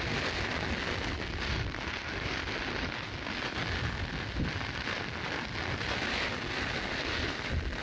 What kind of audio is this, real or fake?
real